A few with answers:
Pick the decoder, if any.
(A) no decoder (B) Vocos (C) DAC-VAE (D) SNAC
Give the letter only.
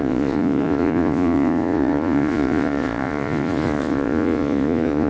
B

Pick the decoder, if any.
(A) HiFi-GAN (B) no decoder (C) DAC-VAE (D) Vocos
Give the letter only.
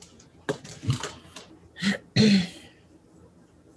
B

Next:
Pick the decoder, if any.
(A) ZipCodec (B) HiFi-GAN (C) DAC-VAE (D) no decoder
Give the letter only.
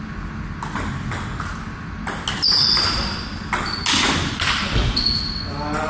D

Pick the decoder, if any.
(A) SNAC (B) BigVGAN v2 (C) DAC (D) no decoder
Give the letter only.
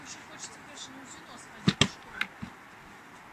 D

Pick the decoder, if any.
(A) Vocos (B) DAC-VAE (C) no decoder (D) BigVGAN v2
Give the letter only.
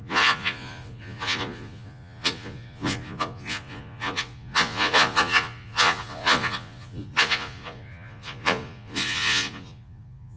A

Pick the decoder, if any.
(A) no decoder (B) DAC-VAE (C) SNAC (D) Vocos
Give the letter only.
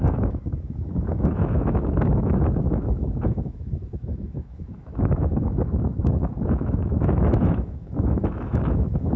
B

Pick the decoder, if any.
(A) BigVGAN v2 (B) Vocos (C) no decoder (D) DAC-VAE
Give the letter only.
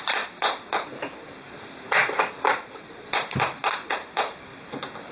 C